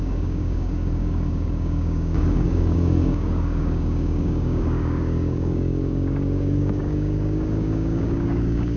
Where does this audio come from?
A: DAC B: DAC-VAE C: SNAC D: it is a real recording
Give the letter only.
A